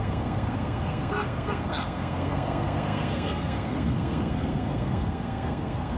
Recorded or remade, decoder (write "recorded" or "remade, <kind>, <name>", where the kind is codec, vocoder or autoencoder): remade, codec, SNAC